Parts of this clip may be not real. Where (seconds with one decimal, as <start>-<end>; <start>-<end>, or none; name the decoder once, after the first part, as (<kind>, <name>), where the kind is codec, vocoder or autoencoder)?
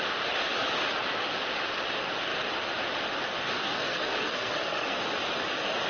3.6-5.0 (codec, SNAC)